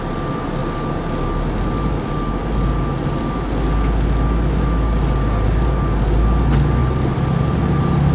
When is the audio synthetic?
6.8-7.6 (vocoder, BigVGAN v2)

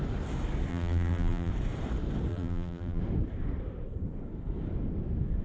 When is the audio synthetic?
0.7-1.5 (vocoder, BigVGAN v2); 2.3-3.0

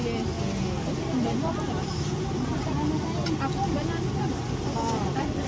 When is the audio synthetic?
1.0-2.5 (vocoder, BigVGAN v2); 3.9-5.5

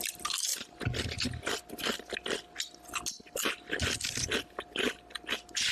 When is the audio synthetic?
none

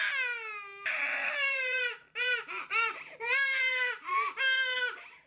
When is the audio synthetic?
1.2-4.4 (vocoder, BigVGAN v2)

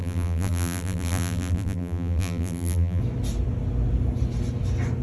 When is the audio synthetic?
0.0-3.0 (vocoder, BigVGAN v2)